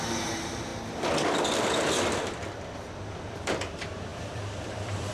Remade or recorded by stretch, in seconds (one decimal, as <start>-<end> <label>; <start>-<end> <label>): 0.0-0.7 remade; 0.7-2.9 recorded; 2.9-5.1 remade